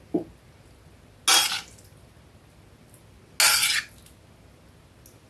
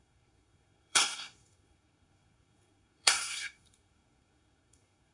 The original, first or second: first